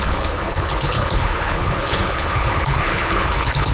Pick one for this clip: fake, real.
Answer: fake